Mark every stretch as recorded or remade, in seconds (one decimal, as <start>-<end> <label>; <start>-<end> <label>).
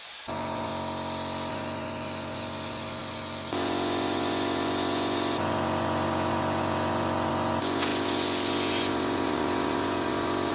0.0-0.7 remade; 0.7-1.5 recorded; 1.5-10.5 remade